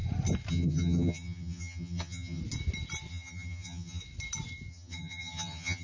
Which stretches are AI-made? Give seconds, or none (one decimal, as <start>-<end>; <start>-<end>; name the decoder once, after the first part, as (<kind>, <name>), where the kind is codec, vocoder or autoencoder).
0.5-2.4 (vocoder, HiFi-GAN); 3.1-4.0; 4.7-5.8